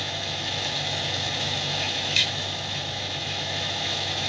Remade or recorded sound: remade